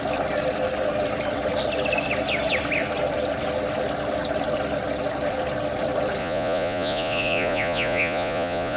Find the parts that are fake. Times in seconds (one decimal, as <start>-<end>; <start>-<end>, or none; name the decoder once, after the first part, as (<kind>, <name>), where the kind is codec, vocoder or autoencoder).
6.2-8.8 (vocoder, Vocos)